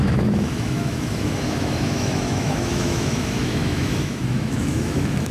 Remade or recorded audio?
remade